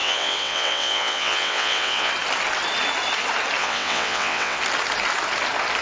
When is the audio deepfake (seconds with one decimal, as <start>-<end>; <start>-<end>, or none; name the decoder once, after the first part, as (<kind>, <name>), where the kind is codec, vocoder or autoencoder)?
0.0-2.1 (vocoder, WaveNeXt); 3.6-4.6